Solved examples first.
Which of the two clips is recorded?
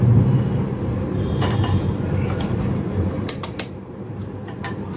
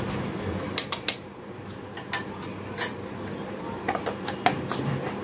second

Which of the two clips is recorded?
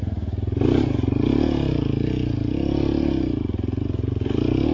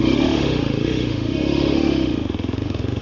first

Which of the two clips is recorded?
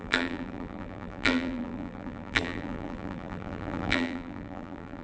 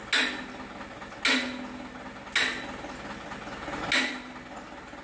second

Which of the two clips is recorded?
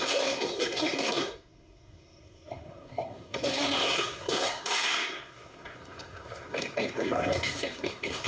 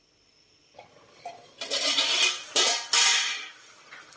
second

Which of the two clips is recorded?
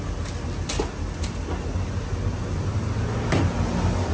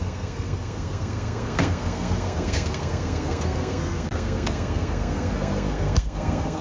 first